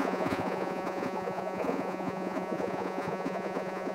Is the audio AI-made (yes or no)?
yes